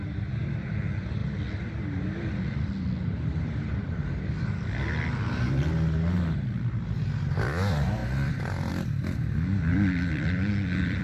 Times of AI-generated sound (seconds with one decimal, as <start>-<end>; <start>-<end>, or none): 8.0-8.7; 9.7-11.0